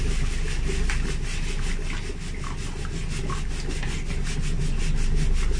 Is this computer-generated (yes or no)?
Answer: no